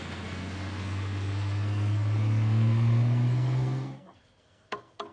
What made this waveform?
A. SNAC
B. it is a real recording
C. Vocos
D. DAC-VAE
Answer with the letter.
A